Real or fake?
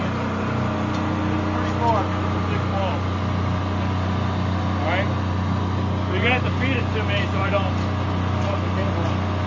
real